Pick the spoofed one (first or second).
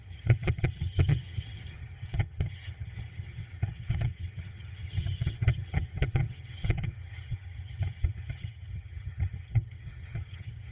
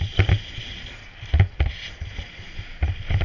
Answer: first